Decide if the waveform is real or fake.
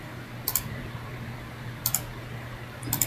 fake